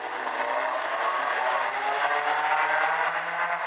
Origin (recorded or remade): recorded